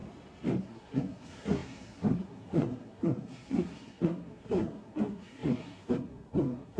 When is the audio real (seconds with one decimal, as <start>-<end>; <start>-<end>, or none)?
0.0-0.6